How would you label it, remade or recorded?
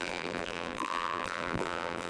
remade